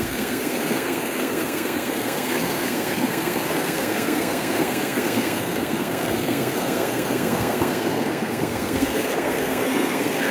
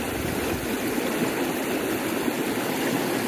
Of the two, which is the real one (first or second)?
second